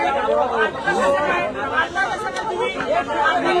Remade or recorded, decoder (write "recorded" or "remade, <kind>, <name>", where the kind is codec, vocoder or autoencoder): recorded